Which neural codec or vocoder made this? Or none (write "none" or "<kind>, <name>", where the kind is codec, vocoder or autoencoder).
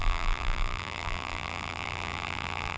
vocoder, BigVGAN v2